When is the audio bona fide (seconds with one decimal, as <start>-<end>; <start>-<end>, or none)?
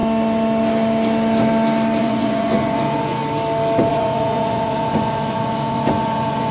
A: 0.0-2.0; 3.2-3.9